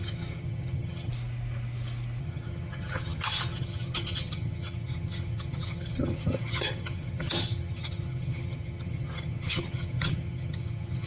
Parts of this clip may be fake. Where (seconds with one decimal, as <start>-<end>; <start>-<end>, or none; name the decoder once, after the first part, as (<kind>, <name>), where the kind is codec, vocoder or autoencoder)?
0.0-1.1 (vocoder, HiFi-GAN); 2.2-11.1